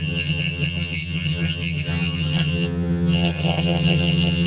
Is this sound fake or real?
fake